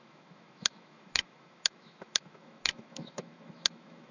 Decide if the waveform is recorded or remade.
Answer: remade